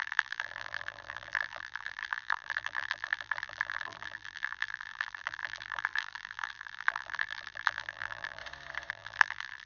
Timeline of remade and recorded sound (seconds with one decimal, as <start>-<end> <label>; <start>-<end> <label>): 0.0-8.4 remade; 8.4-8.9 recorded; 8.9-9.7 remade